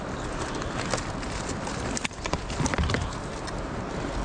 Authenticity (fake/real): real